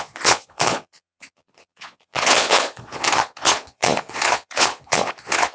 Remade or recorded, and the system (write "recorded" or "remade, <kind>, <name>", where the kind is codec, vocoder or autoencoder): remade, vocoder, Vocos